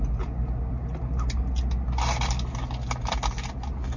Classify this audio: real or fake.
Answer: real